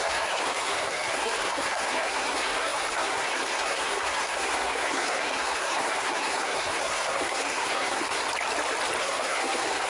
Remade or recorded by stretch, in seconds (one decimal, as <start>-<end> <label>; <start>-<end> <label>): 0.0-8.2 remade; 8.2-9.0 recorded; 9.0-9.9 remade